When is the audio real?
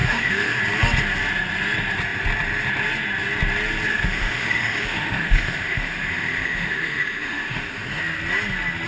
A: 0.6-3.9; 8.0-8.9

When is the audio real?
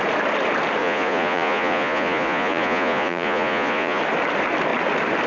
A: 0.0-0.8; 4.0-5.3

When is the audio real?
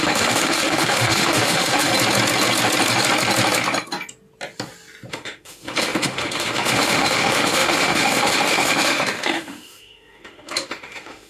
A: 1.9-5.1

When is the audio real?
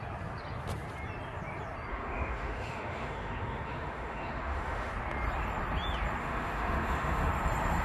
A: 0.0-1.9; 4.9-6.2; 7.3-7.8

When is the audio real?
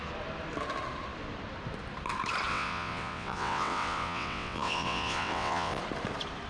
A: 0.0-2.5; 5.8-6.5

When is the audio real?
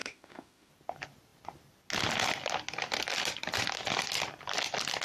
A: 0.7-5.0